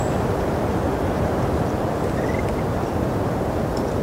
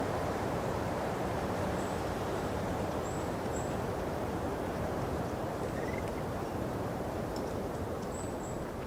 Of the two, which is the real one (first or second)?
first